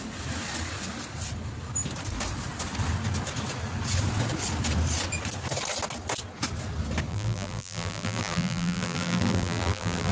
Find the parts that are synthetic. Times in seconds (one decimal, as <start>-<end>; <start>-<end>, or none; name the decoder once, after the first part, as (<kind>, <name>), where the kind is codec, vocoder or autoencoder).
7.1-10.1 (vocoder, BigVGAN v2)

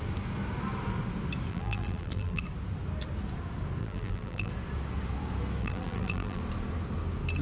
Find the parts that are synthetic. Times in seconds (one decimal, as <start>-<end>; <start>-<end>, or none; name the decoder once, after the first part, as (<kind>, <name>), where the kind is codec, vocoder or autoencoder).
1.5-2.4 (vocoder, BigVGAN v2); 3.8-4.5; 5.6-6.4

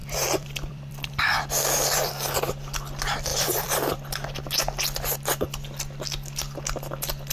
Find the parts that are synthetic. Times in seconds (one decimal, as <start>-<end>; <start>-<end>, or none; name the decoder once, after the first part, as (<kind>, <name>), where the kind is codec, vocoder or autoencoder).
0.0-2.1 (vocoder, BigVGAN v2); 3.3-3.9

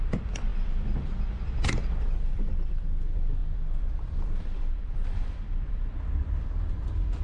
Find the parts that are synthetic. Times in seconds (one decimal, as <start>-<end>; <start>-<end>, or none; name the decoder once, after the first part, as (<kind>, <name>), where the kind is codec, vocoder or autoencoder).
0.0-7.2 (vocoder, BigVGAN v2)

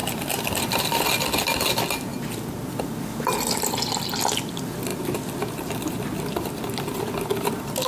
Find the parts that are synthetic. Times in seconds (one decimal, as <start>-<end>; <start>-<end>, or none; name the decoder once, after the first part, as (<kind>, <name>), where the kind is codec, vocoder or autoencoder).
0.0-0.8 (vocoder, BigVGAN v2)

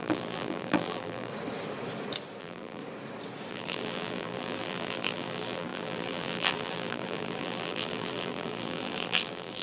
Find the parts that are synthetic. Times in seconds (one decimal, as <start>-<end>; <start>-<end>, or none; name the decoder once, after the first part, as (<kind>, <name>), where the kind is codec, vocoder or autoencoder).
0.0-1.3 (vocoder, BigVGAN v2); 2.4-2.8; 3.5-9.6

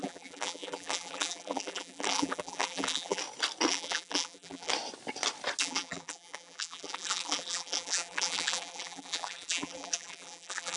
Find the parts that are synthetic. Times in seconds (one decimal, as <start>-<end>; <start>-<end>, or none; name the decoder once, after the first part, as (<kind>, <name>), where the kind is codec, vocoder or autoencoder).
0.0-3.2 (vocoder, BigVGAN v2); 3.7-4.7; 5.6-10.8

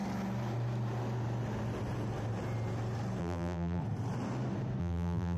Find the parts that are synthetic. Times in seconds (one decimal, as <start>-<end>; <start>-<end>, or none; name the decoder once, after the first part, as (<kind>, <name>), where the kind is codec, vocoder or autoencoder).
3.2-3.8 (vocoder, BigVGAN v2); 4.8-5.4